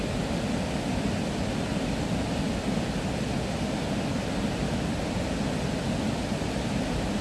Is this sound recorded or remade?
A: recorded